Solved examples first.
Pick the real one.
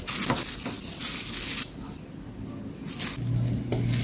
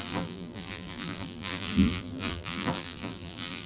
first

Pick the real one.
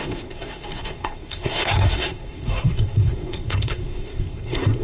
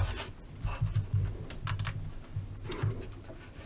second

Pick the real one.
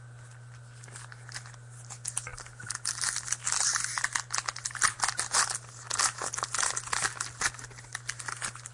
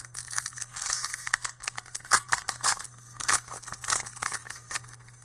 first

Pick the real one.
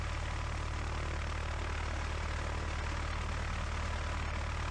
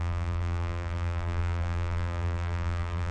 first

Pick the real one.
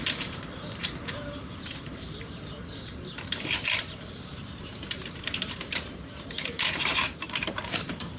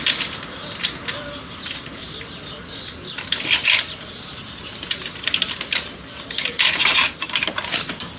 second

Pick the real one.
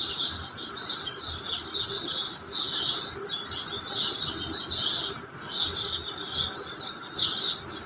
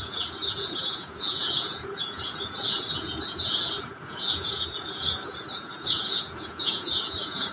first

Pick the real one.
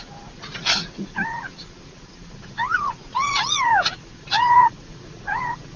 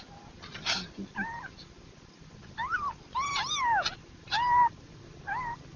second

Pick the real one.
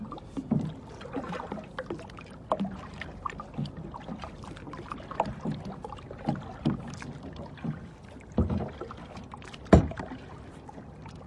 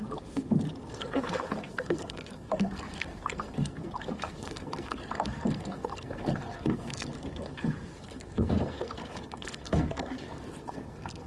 first